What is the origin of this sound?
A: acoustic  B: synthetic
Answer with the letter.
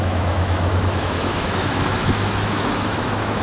B